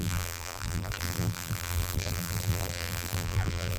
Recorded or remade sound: remade